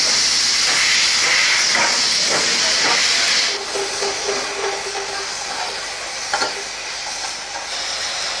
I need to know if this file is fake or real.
real